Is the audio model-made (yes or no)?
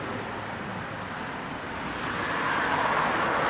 yes